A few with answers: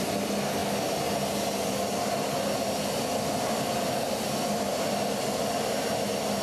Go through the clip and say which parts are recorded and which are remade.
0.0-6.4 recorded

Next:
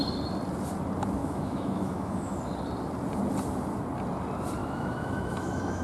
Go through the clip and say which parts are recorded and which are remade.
0.0-1.2 recorded; 1.2-2.4 remade; 2.4-4.6 recorded; 4.6-5.8 remade

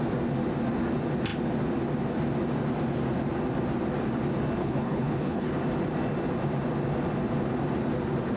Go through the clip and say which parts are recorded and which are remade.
0.0-4.6 recorded; 4.6-5.5 remade; 5.5-8.4 recorded

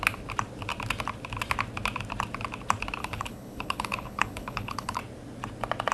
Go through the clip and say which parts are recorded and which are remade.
0.0-3.0 recorded; 3.0-5.0 remade; 5.0-5.9 recorded

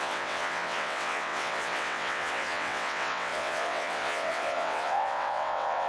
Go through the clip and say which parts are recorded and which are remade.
0.0-5.9 remade

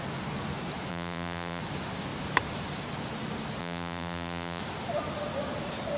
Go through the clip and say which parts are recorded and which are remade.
0.0-0.9 recorded; 0.9-1.6 remade; 1.6-3.6 recorded; 3.6-4.6 remade; 4.6-6.0 recorded

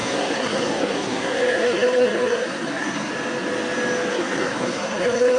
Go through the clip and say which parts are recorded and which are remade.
0.0-3.1 remade; 3.1-4.1 recorded; 4.1-5.4 remade

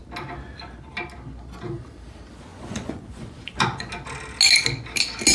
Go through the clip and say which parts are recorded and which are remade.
0.0-2.5 recorded; 2.5-3.9 remade; 3.9-5.3 recorded